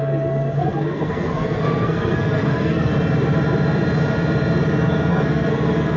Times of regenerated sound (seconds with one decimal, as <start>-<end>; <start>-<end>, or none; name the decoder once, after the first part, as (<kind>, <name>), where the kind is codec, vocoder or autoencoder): 0.0-2.9 (codec, SNAC); 5.1-6.0